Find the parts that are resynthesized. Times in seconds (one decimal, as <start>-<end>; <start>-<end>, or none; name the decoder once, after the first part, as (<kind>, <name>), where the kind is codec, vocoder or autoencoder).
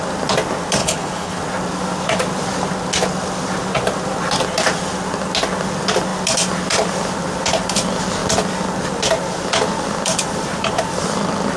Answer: 0.8-1.4 (codec, HILCodec)